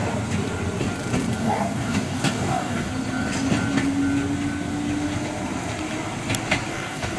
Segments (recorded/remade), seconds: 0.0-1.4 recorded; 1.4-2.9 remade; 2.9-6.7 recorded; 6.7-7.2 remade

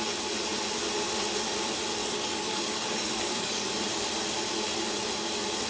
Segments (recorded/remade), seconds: 0.0-2.0 recorded; 2.0-3.7 remade; 3.7-5.7 recorded

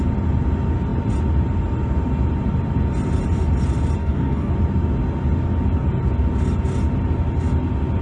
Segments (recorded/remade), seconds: 0.0-4.0 recorded; 4.0-4.5 remade; 4.5-8.0 recorded

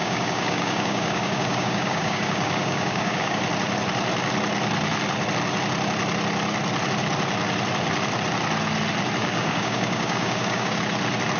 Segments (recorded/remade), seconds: 0.0-3.4 remade; 3.4-9.2 recorded; 9.2-10.8 remade; 10.8-11.4 recorded

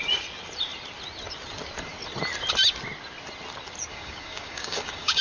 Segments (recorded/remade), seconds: 0.0-3.9 recorded; 3.9-5.2 remade